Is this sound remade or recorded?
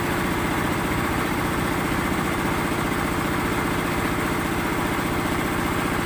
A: remade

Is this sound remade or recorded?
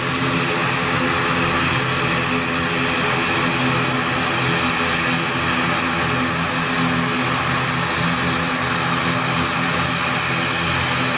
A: recorded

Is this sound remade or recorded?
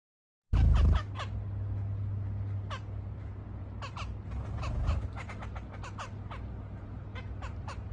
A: recorded